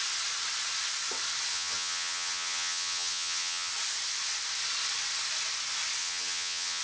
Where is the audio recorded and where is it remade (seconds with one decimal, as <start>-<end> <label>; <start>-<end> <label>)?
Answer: 0.0-1.5 recorded; 1.5-3.7 remade; 3.7-6.0 recorded; 6.0-6.8 remade